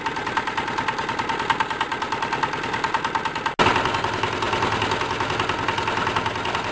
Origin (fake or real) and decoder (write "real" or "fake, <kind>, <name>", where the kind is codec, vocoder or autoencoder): real